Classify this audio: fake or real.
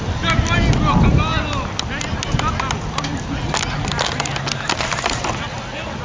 real